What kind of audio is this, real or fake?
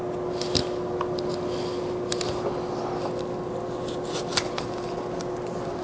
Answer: real